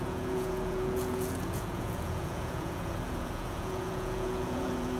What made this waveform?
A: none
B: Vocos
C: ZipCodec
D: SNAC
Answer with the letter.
B